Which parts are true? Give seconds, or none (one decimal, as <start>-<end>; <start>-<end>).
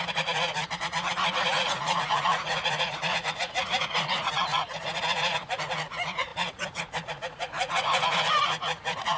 none